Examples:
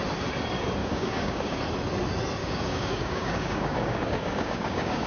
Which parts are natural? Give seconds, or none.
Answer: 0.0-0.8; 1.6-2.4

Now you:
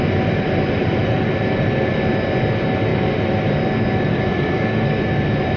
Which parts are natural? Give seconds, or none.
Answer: 0.0-4.1; 5.0-5.6

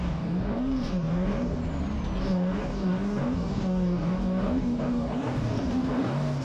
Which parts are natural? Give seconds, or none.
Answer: 1.6-2.2